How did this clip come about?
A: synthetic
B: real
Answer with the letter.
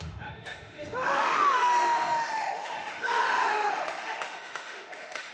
A